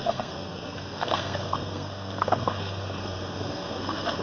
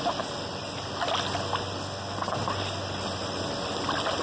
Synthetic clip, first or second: first